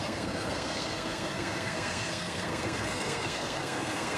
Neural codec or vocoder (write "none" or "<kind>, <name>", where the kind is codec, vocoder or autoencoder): codec, SNAC